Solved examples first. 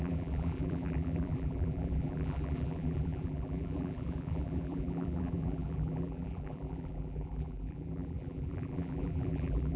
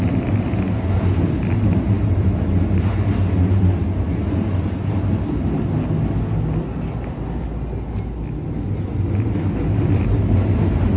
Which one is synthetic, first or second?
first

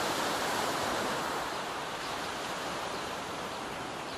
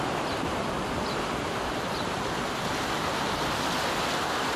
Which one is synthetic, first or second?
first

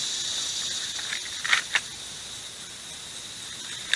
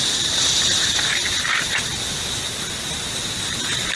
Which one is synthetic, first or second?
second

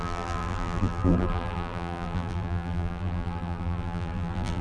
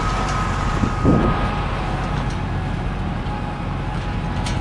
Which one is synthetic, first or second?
first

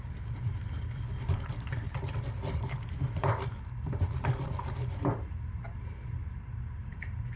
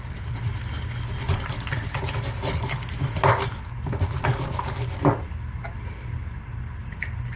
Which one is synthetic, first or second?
first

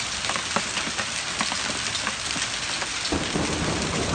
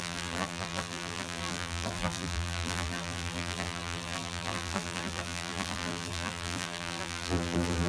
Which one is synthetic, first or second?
second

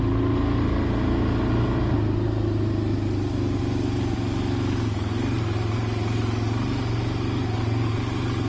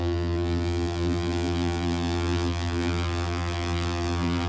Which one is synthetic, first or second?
second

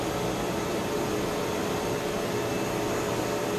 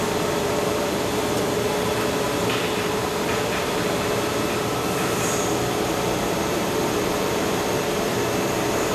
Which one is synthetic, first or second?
second